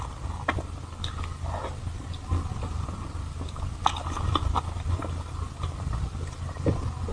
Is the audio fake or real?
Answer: real